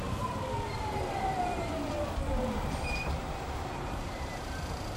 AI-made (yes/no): yes